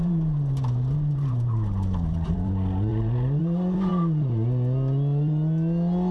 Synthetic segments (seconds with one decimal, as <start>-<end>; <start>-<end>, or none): 0.0-2.5; 2.9-3.4